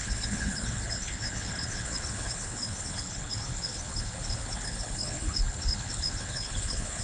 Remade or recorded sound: remade